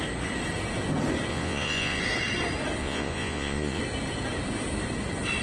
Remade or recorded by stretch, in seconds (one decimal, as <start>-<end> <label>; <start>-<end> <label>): 0.0-1.3 recorded; 1.3-2.0 remade; 2.0-2.8 recorded; 2.8-3.8 remade; 3.8-5.4 recorded

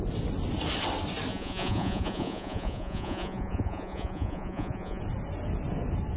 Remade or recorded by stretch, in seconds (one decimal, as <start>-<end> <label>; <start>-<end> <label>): 0.0-1.3 recorded; 1.3-5.0 remade; 5.0-6.2 recorded